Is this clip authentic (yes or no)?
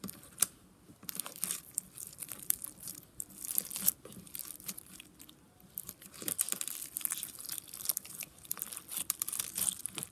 no